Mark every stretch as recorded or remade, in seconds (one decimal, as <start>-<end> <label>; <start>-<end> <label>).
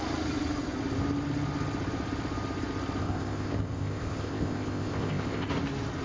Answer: 0.0-3.0 recorded; 3.0-5.5 remade; 5.5-6.0 recorded